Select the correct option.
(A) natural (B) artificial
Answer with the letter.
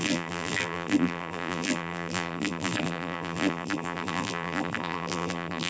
B